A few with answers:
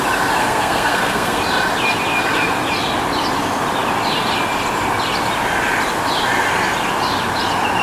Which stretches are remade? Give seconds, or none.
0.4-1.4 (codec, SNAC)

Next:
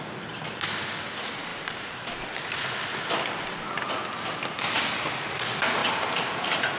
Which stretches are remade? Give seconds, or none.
1.5-2.1 (vocoder, BigVGAN v2); 5.8-6.8

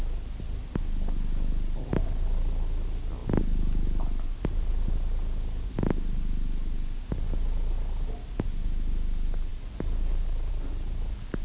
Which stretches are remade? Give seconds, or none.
none

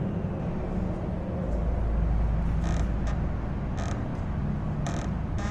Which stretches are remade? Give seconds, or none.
4.1-5.0 (vocoder, BigVGAN v2)

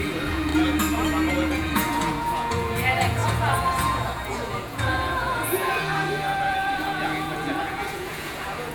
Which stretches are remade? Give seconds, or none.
0.0-0.5 (vocoder, Vocos); 1.3-8.7

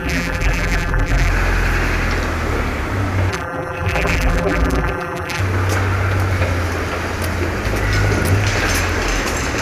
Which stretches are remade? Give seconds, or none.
0.0-1.3 (vocoder, BigVGAN v2); 3.3-5.4

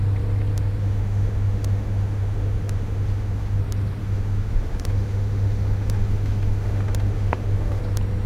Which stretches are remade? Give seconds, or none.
0.8-3.6 (autoencoder, DAC-VAE); 4.0-7.8